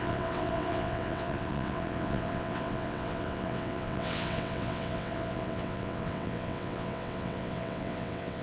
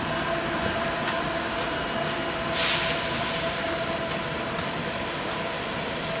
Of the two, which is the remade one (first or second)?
first